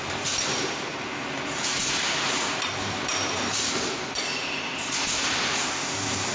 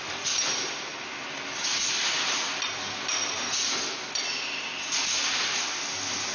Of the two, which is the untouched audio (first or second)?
second